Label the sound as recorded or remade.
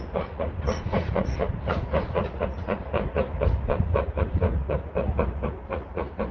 remade